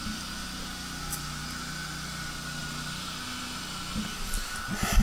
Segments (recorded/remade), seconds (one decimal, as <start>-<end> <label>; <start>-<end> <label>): 0.0-5.0 recorded